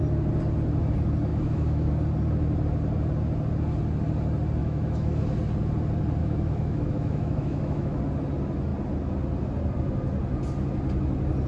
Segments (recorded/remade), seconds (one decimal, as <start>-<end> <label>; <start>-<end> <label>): 0.0-1.3 recorded; 1.3-1.9 remade; 1.9-4.6 recorded; 4.6-5.2 remade; 5.2-6.2 recorded; 6.2-8.0 remade; 8.0-11.5 recorded